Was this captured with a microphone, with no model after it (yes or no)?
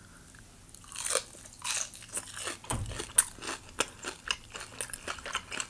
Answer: yes